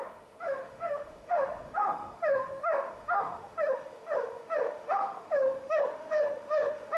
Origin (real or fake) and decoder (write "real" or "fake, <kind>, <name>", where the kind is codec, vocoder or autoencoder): fake, autoencoder, DAC-VAE